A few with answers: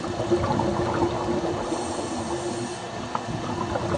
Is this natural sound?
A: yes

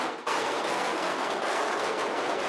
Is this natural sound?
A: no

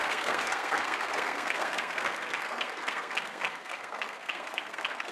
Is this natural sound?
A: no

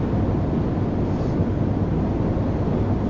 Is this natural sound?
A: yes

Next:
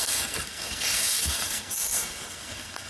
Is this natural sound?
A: no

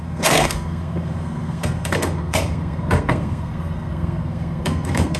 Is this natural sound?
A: no